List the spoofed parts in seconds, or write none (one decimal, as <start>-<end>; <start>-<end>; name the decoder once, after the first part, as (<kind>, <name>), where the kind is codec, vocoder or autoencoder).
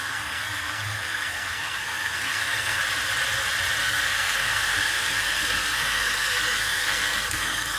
0.0-2.8 (codec, SNAC); 3.8-7.8